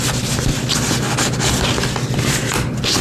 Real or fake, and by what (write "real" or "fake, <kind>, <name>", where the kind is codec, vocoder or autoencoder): real